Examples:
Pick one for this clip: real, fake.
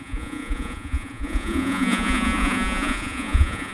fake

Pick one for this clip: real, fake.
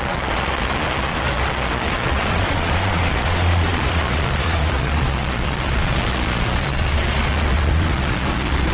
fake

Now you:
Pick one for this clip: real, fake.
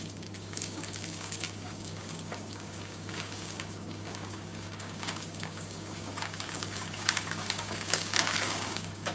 fake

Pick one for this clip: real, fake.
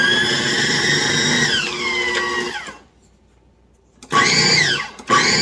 real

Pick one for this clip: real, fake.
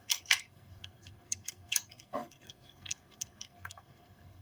fake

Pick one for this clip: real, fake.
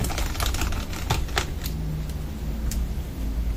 real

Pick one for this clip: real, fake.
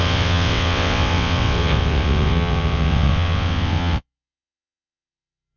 fake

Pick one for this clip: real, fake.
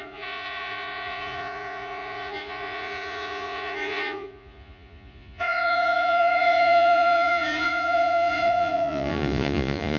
fake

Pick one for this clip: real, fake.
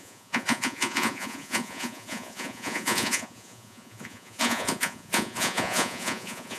fake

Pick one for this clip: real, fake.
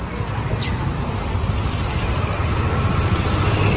real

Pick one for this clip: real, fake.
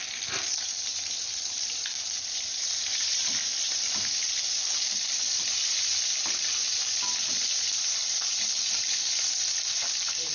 fake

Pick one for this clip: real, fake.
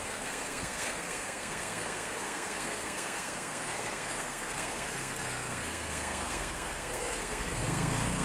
fake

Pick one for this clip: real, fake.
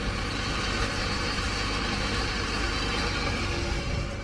real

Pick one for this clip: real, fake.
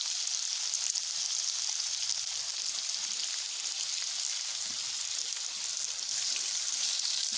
real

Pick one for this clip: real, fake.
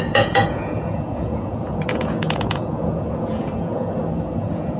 fake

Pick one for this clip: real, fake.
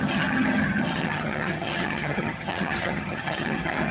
fake